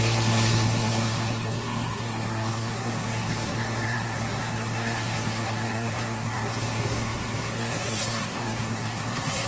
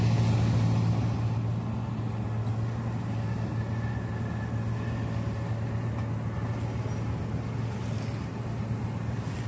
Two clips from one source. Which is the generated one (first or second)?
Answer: first